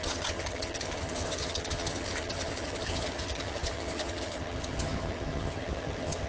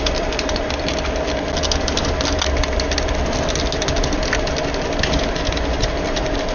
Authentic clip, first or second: second